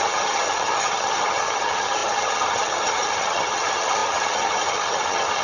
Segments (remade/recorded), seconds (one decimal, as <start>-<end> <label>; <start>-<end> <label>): 0.0-5.4 remade